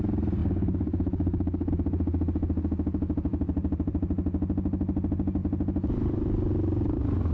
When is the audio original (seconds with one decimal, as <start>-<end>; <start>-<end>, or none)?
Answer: 0.0-0.4; 1.7-7.3